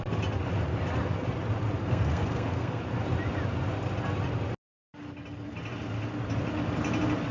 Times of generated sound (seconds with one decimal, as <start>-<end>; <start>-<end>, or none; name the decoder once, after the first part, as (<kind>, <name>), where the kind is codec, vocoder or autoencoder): 1.8-2.8 (codec, SNAC)